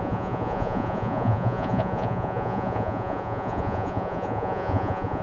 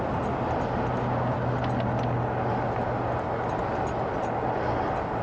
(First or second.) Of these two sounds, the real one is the second